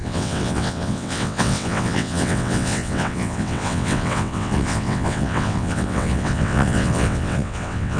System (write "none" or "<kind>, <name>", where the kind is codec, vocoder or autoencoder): vocoder, WaveNeXt